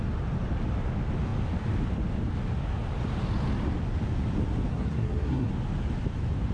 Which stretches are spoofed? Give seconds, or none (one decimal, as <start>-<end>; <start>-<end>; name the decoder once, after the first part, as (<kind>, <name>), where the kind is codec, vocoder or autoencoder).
4.7-5.5 (codec, SNAC)